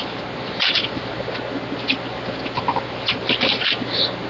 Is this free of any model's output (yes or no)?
yes